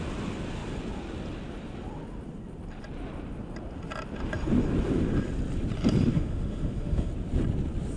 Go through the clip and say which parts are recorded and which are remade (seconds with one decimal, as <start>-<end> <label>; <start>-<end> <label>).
0.0-6.1 recorded; 6.1-7.1 remade; 7.1-8.0 recorded